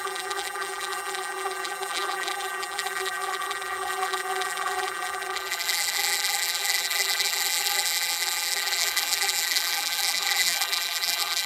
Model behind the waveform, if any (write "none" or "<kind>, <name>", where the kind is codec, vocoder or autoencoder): vocoder, BigVGAN v2